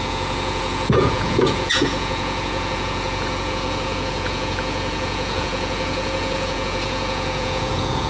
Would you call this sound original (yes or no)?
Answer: no